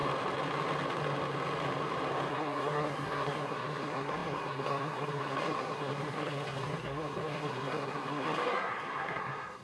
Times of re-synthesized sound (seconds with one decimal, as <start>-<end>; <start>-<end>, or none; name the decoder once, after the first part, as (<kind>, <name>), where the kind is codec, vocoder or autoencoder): 2.3-9.6 (codec, SNAC)